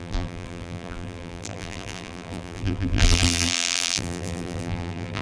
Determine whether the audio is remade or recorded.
remade